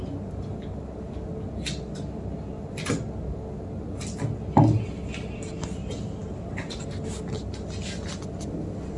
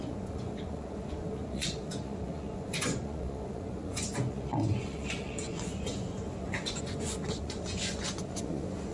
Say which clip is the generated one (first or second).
second